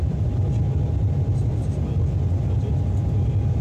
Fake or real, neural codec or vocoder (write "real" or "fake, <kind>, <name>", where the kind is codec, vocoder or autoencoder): real